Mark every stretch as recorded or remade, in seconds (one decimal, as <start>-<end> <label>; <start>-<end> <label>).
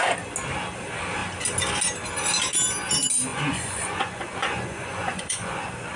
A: 0.0-3.3 recorded; 3.3-5.6 remade; 5.6-6.0 recorded